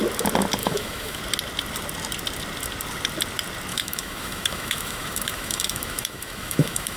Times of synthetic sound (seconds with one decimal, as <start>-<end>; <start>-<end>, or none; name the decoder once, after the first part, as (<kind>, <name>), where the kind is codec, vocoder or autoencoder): 0.6-1.2 (autoencoder, DAC-VAE); 3.7-7.0